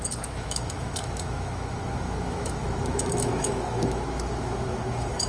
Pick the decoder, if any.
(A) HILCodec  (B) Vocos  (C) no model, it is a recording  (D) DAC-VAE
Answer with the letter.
D